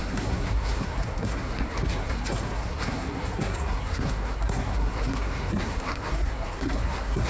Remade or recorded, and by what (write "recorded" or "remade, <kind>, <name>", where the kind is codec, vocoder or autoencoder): remade, codec, SNAC